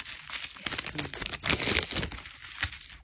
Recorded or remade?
recorded